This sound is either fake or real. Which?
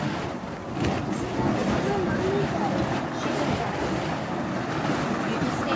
real